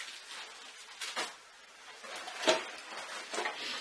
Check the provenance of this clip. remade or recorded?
recorded